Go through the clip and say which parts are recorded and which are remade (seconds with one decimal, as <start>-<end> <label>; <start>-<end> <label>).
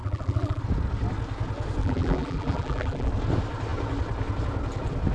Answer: 0.0-0.6 remade; 0.6-1.8 recorded; 1.8-3.1 remade; 3.1-5.1 recorded